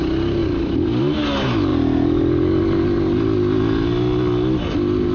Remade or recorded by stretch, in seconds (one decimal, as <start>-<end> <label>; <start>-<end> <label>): 0.0-5.1 recorded